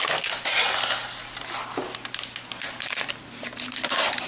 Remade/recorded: recorded